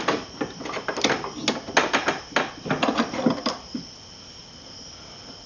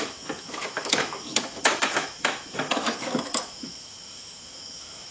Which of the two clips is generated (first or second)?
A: second